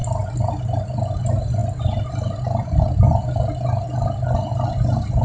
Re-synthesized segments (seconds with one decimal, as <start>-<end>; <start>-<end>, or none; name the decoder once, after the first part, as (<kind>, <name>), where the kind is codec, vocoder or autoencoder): none